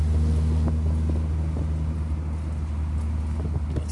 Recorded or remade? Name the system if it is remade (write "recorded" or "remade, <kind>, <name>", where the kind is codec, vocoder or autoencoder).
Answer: recorded